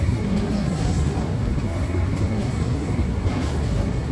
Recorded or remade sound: remade